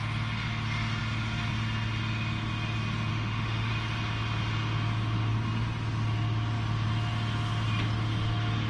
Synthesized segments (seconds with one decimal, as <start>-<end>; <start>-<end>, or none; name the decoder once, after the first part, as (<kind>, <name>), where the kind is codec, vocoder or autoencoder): 3.1-3.7 (autoencoder, DAC-VAE)